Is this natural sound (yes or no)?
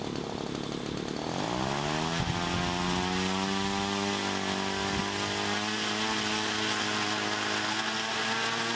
yes